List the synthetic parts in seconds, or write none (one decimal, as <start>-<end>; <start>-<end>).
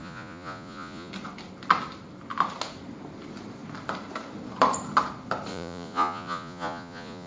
0.0-1.1; 5.5-7.3